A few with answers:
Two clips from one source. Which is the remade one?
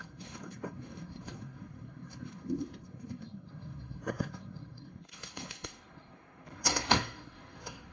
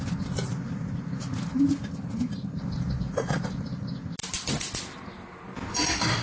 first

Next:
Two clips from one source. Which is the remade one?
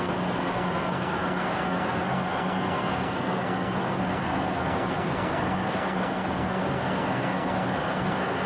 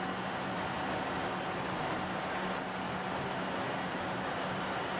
first